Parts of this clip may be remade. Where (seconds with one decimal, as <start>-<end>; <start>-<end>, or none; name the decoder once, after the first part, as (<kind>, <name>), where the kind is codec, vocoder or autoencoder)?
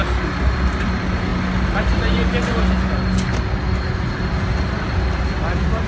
none